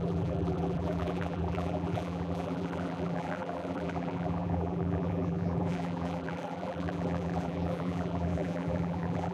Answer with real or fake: fake